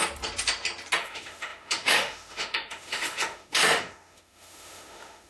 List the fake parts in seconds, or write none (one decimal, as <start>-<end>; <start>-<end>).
1.0-5.3